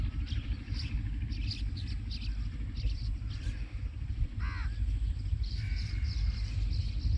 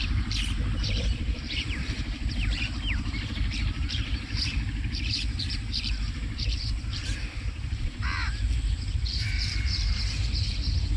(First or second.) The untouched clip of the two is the first